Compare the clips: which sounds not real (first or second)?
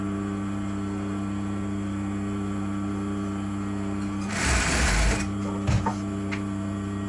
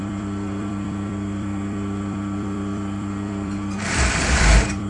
second